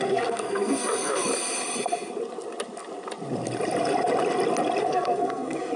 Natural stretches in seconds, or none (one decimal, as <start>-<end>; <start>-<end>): 1.3-4.8